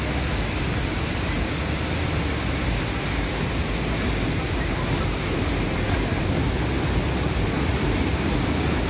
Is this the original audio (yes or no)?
yes